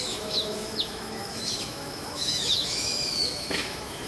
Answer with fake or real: fake